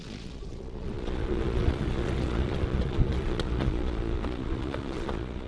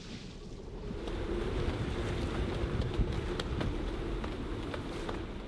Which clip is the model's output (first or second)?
first